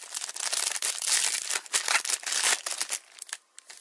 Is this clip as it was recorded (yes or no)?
yes